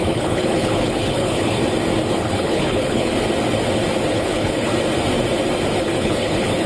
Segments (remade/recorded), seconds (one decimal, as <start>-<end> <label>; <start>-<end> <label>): 0.0-1.6 remade; 1.6-2.1 recorded; 2.1-3.1 remade; 3.1-4.1 recorded; 4.1-4.7 remade; 4.7-5.8 recorded; 5.8-6.7 remade